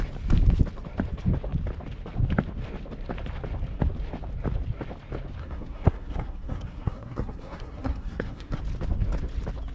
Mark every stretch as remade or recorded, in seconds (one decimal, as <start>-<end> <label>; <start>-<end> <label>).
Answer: 0.0-5.4 recorded; 5.4-8.6 remade; 8.6-9.7 recorded